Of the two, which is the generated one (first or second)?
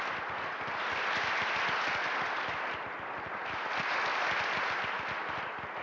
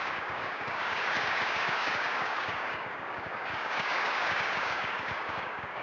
second